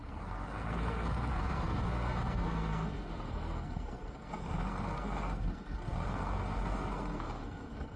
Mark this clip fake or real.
fake